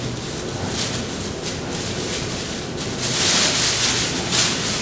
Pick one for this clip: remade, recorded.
recorded